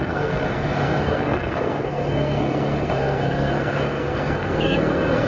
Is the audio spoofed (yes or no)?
yes